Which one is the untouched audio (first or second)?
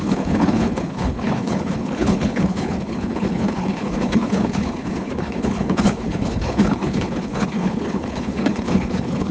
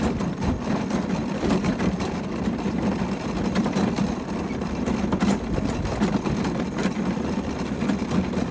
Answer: second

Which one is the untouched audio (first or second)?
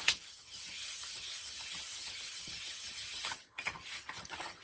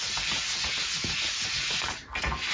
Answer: second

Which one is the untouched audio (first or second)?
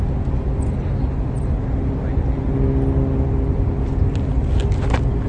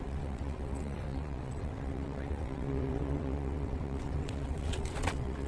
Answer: first